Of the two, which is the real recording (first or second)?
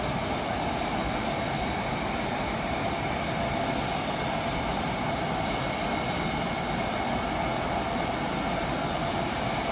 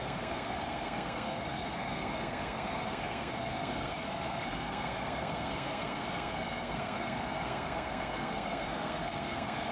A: first